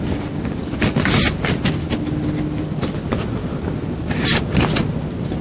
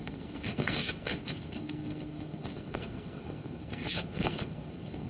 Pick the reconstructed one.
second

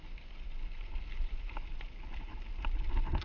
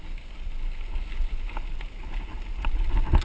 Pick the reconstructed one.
first